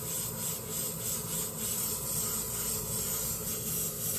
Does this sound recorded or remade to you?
recorded